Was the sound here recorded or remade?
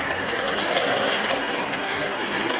remade